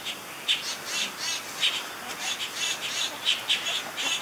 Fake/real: real